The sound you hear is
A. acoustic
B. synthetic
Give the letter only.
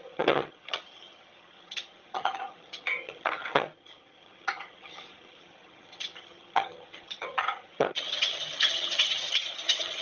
B